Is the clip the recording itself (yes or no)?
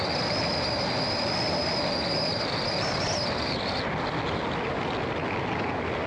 yes